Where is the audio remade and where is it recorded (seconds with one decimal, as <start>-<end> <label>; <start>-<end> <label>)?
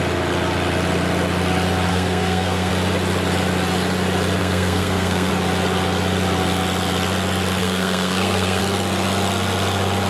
0.0-1.9 recorded; 1.9-2.7 remade; 2.7-4.4 recorded; 4.4-5.3 remade; 5.3-7.6 recorded; 7.6-8.6 remade; 8.6-10.1 recorded